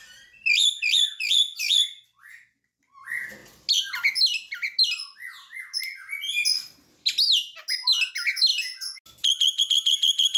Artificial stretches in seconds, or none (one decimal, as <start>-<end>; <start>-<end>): none